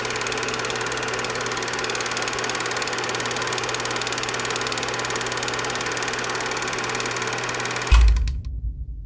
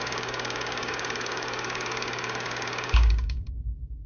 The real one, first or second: first